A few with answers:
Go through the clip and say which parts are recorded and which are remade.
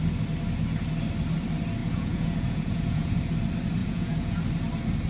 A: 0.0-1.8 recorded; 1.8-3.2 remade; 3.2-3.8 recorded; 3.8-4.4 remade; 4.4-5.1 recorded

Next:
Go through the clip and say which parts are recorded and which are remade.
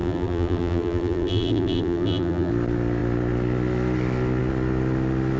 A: 0.0-2.5 remade; 2.5-5.4 recorded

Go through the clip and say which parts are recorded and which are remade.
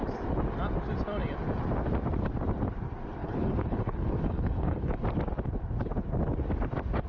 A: 0.0-3.2 recorded; 3.2-5.0 remade; 5.0-7.1 recorded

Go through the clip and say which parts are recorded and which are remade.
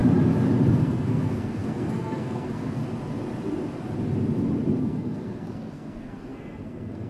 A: 0.0-0.7 recorded; 0.7-2.8 remade; 2.8-4.8 recorded; 4.8-7.1 remade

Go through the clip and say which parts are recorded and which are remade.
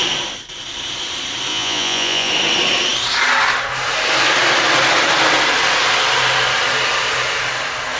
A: 0.0-1.5 recorded; 1.5-2.3 remade; 2.3-8.0 recorded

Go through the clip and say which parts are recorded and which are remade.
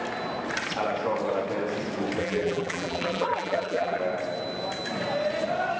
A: 0.0-2.2 recorded; 2.2-4.0 remade; 4.0-5.8 recorded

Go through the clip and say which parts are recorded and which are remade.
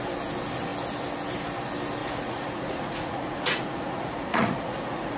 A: 0.0-2.0 recorded; 2.0-5.2 remade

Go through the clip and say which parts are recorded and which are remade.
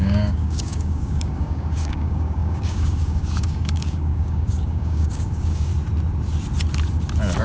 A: 0.0-5.7 remade; 5.7-7.4 recorded